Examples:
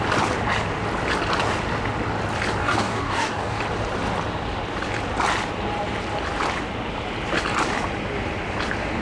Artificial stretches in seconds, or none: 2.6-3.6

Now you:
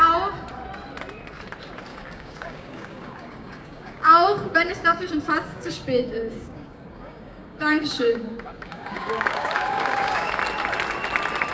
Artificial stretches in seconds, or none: 1.9-5.1; 5.5-10.3

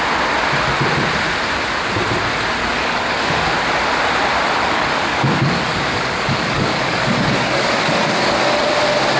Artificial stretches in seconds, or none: 2.6-3.5; 4.6-8.6

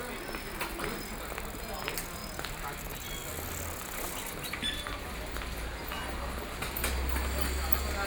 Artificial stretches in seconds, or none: none

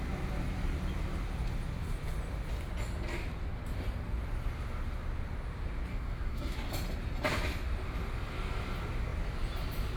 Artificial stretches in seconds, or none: 5.9-6.7

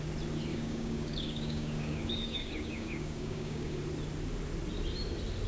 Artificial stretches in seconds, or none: 0.5-3.8

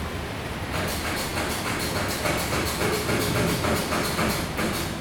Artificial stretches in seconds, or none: none